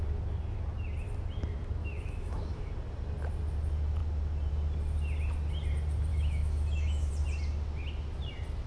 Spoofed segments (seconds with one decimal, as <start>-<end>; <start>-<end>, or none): 1.8-2.7; 6.1-7.1